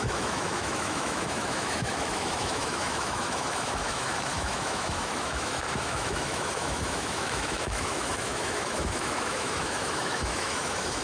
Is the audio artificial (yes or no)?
yes